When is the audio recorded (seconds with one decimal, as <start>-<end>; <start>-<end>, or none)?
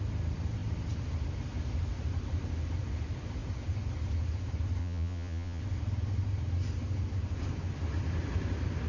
0.0-4.8; 5.6-8.9